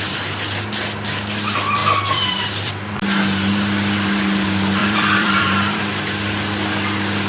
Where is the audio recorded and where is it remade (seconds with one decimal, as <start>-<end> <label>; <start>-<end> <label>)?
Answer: 0.0-1.8 recorded; 1.8-2.7 remade; 2.7-4.8 recorded; 4.8-5.8 remade; 5.8-7.3 recorded